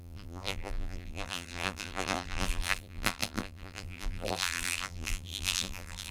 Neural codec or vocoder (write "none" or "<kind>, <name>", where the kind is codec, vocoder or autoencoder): vocoder, BigVGAN v2